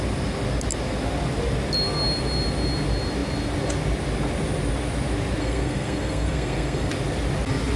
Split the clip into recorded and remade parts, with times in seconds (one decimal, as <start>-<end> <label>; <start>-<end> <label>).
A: 0.0-5.4 recorded; 5.4-6.9 remade; 6.9-7.8 recorded